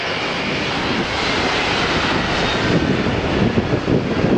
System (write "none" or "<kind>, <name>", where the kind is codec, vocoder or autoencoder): none